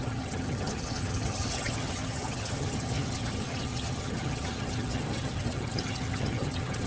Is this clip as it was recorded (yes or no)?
no